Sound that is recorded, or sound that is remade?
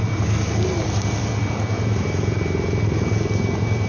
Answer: recorded